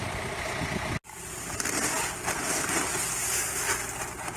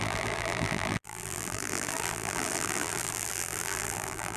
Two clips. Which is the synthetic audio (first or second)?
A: second